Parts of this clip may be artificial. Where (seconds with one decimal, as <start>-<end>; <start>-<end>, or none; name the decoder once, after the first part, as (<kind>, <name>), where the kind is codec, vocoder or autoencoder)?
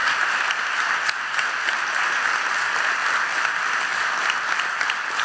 none